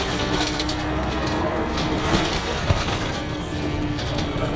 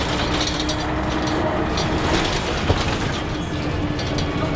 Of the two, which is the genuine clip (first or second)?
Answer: second